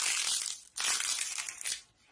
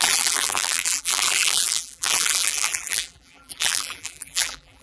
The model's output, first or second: second